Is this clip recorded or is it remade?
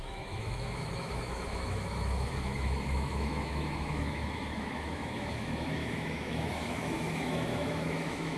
remade